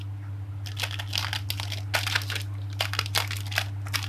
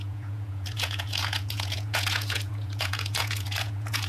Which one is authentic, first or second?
first